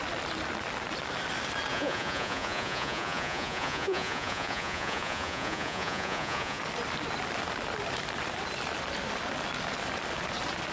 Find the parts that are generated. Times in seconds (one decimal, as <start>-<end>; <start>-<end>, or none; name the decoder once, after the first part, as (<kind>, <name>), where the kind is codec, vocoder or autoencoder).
1.7-6.6 (vocoder, Vocos)